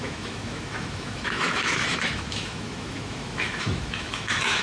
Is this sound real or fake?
fake